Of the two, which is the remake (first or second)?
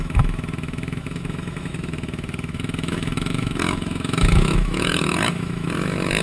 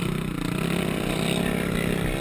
first